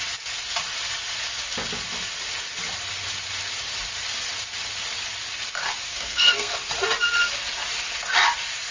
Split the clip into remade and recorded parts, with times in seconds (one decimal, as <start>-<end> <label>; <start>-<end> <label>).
0.0-5.9 recorded; 5.9-6.5 remade; 6.5-8.7 recorded